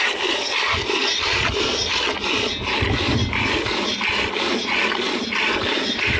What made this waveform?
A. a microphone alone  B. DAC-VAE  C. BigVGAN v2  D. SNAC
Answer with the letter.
A